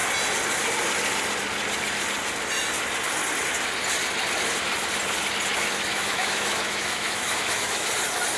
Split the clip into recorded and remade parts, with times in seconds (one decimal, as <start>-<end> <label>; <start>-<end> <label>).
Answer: 0.0-5.9 recorded; 5.9-7.9 remade; 7.9-8.4 recorded